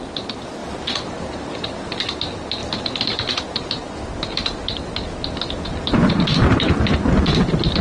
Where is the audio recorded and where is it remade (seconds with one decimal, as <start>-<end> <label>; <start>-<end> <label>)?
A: 0.0-0.6 recorded; 0.6-2.0 remade; 2.0-2.6 recorded; 2.6-3.3 remade; 3.3-7.8 recorded